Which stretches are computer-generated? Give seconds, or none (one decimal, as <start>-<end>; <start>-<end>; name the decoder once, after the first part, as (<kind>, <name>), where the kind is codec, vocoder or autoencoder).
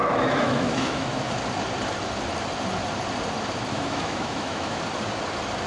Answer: 0.0-1.3 (autoencoder, DAC-VAE); 3.7-4.8